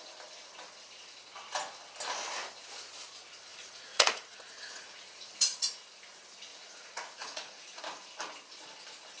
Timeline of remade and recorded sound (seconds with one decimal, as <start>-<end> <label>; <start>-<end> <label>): 0.0-3.5 recorded; 3.5-5.7 remade; 5.7-6.5 recorded; 6.5-7.8 remade; 7.8-9.2 recorded